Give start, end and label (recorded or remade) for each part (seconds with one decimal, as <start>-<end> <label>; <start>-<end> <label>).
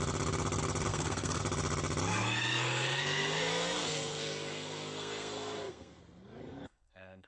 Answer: 0.0-0.9 recorded; 0.9-1.4 remade; 1.4-2.1 recorded; 2.1-6.0 remade; 6.0-6.4 recorded; 6.4-7.3 remade